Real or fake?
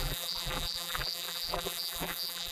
fake